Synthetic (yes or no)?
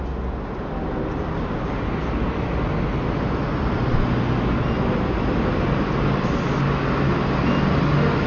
no